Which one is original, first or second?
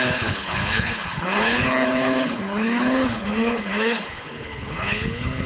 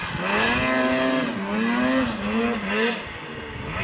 second